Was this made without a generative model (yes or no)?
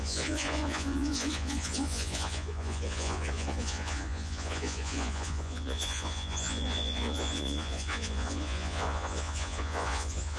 no